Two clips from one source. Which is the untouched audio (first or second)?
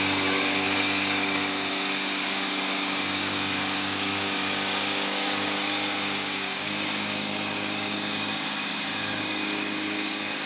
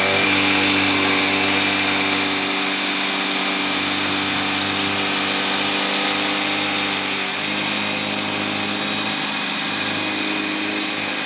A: second